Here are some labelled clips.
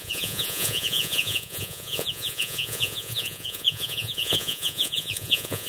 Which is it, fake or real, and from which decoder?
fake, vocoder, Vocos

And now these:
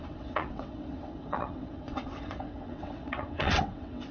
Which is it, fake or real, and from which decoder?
fake, vocoder, WaveNeXt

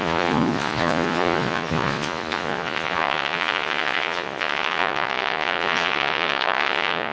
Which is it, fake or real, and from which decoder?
fake, vocoder, Vocos